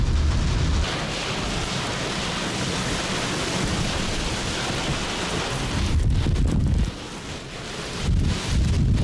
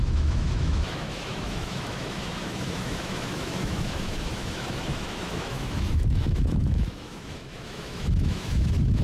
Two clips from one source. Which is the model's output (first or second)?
second